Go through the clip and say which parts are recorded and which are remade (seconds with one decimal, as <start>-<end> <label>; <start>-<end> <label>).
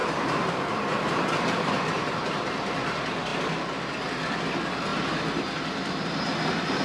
0.0-2.1 remade; 2.1-4.9 recorded; 4.9-5.5 remade; 5.5-6.8 recorded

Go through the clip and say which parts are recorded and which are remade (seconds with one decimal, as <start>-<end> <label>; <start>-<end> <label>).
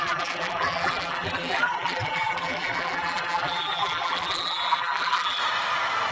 0.0-5.4 remade; 5.4-6.1 recorded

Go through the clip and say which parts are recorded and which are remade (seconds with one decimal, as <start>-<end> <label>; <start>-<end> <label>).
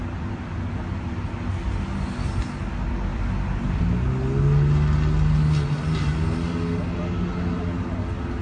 0.0-3.1 recorded; 3.1-3.8 remade; 3.8-8.4 recorded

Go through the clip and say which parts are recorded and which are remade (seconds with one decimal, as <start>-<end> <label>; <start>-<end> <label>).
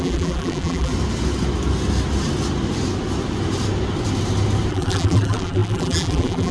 0.0-0.9 remade; 0.9-4.7 recorded; 4.7-6.5 remade